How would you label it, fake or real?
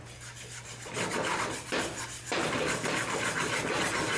real